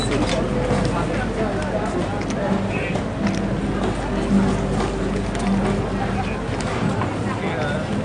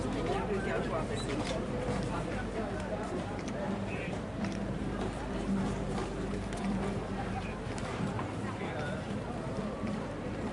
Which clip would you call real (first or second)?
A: first